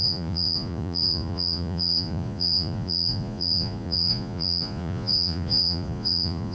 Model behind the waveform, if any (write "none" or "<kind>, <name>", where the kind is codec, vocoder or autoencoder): vocoder, Vocos